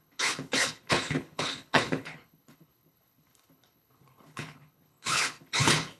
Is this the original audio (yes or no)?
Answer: no